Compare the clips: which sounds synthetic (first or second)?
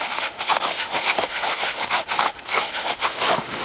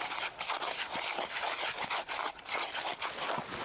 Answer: first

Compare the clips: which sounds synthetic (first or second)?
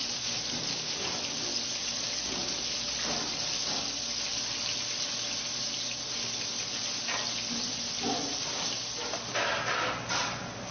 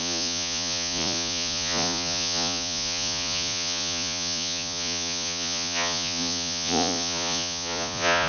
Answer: second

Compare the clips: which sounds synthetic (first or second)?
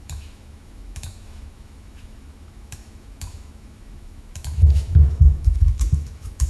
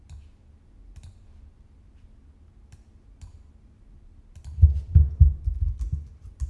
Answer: first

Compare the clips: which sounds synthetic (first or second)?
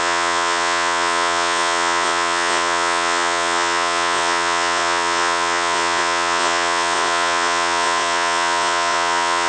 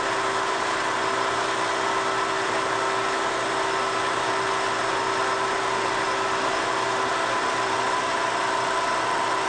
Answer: first